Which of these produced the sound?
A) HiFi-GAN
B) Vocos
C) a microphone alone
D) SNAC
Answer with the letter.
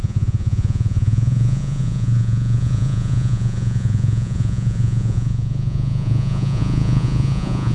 B